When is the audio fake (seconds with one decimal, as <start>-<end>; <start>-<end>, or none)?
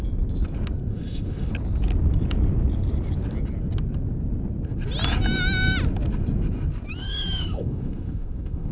0.9-1.5; 7.0-8.7